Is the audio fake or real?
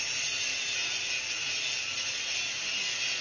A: real